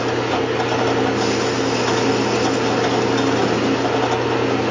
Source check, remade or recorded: recorded